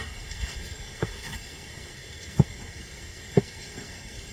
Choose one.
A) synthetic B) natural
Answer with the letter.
A